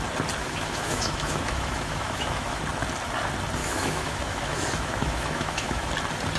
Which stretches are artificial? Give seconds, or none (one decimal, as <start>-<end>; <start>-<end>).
0.4-2.6; 3.6-5.9